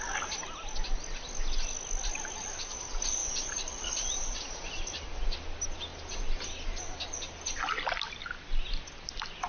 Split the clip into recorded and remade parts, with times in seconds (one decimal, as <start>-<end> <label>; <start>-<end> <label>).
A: 0.0-3.2 recorded; 3.2-5.4 remade; 5.4-9.5 recorded